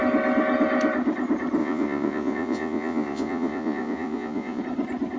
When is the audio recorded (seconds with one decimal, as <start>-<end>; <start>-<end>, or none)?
0.0-1.6; 4.6-5.2